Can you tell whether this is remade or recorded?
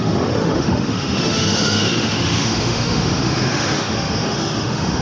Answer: remade